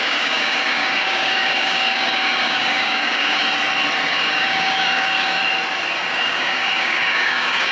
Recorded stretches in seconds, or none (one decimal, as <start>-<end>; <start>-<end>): 3.4-4.1; 5.4-6.1